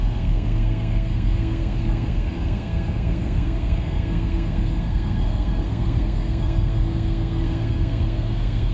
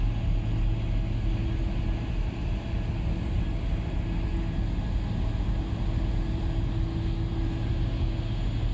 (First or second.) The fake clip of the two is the first